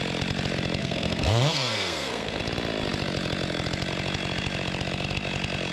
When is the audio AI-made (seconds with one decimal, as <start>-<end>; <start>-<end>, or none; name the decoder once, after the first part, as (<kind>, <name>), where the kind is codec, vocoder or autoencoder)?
0.8-2.4 (codec, SNAC)